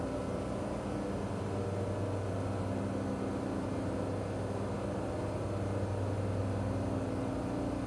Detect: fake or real real